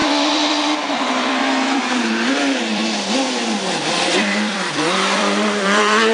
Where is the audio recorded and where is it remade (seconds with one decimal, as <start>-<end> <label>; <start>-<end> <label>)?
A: 0.0-2.8 remade; 2.8-3.9 recorded; 3.9-6.1 remade